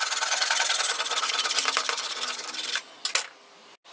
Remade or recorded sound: recorded